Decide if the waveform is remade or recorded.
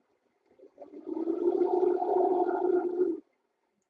recorded